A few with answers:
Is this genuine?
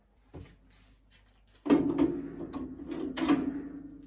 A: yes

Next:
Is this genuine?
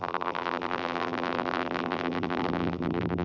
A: no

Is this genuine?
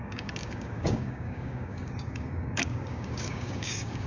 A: no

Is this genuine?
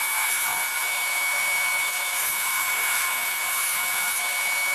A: no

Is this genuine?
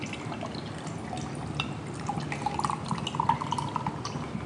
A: yes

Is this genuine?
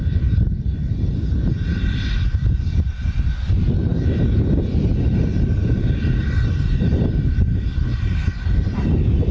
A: yes